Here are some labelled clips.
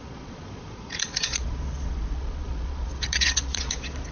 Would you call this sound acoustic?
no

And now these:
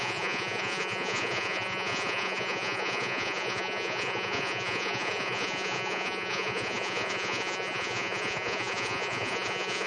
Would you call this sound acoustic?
no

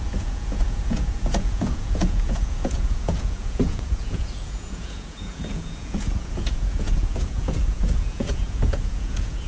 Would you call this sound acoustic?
no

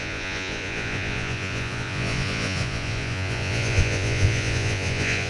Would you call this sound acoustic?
no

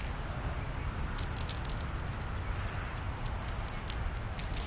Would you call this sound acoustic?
yes